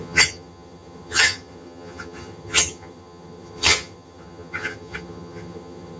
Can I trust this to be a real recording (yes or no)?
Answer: no